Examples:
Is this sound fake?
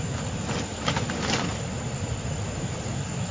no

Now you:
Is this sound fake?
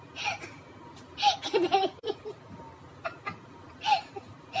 no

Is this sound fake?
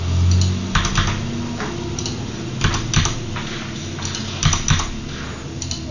no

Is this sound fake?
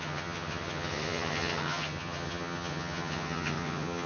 yes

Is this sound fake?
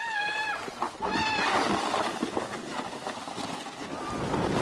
no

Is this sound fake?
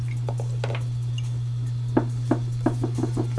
no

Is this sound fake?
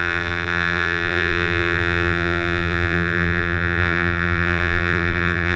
yes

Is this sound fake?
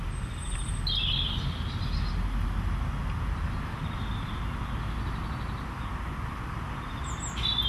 no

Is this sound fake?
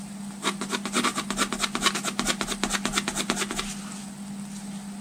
no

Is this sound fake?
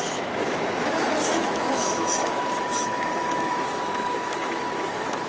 yes